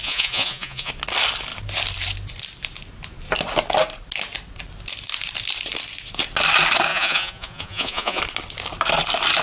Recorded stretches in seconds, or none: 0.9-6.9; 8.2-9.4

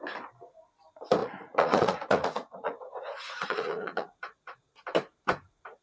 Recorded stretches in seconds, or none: 0.0-1.2; 4.7-5.8

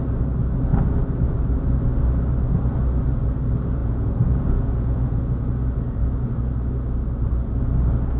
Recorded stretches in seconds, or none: 0.0-3.8; 5.2-8.2